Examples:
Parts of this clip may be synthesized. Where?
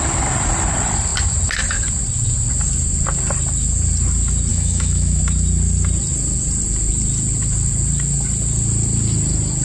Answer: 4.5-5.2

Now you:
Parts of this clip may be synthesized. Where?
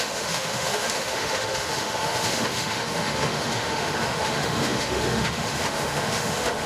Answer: 0.0-6.7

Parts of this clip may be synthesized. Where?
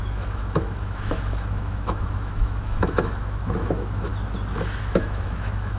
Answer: 0.0-4.1; 4.8-5.8